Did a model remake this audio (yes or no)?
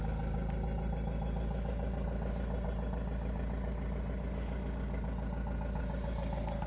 no